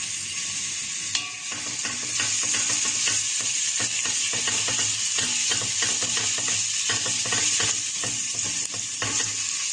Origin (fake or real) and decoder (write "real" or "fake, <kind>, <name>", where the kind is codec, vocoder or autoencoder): real